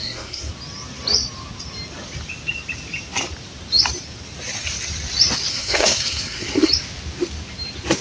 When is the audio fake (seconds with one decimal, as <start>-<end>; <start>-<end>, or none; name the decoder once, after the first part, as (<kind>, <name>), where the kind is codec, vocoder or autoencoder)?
0.0-0.5 (codec, SNAC); 5.5-6.7